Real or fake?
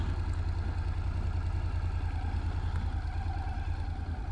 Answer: real